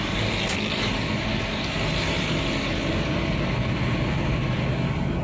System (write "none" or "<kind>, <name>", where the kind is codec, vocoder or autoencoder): none